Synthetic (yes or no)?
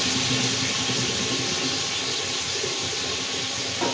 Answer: no